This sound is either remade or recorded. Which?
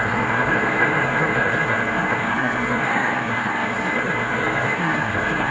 remade